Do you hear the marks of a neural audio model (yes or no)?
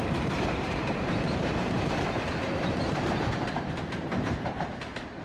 yes